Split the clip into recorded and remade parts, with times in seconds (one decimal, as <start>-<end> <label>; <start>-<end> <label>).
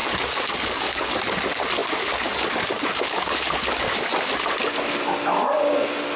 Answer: 0.0-1.1 remade; 1.1-1.8 recorded; 1.8-4.3 remade; 4.3-6.2 recorded